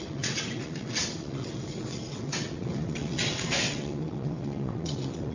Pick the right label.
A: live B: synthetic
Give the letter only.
B